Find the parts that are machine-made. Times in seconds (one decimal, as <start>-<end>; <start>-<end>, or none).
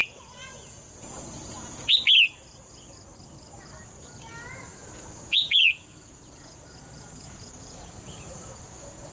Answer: 0.0-1.9; 4.7-9.1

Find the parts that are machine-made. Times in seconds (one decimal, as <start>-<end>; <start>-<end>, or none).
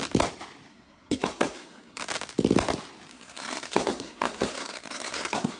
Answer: 0.7-2.0; 3.1-5.6